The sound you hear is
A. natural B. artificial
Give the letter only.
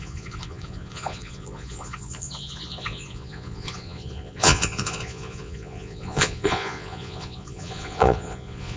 B